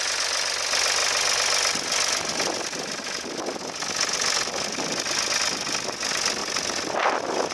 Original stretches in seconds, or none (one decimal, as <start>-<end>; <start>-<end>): 0.0-7.5